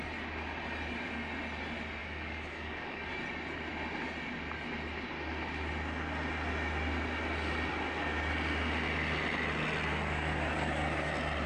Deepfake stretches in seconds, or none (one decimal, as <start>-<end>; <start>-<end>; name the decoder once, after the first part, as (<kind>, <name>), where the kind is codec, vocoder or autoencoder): 2.0-3.1 (codec, DAC); 9.9-11.1